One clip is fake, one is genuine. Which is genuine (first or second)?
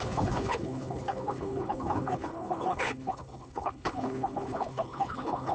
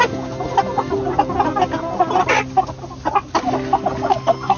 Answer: second